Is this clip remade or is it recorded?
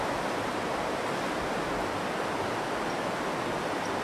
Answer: recorded